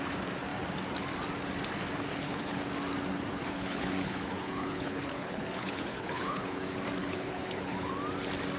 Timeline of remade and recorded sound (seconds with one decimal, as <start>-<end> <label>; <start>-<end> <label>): 0.0-2.1 recorded; 2.1-2.6 remade; 2.6-3.3 recorded; 3.3-6.6 remade; 6.6-7.0 recorded; 7.0-7.9 remade; 7.9-8.6 recorded